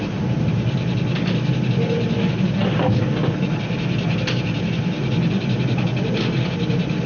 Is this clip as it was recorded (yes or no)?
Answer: yes